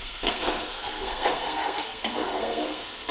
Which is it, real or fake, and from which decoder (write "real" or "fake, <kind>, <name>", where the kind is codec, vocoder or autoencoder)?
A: fake, codec, SNAC